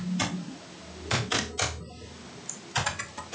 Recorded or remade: recorded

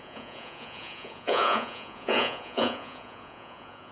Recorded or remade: remade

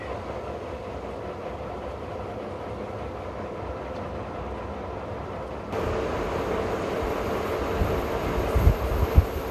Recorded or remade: recorded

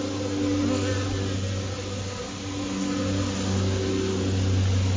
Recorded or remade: recorded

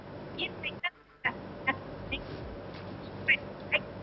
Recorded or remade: recorded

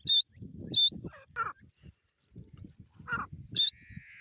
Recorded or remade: recorded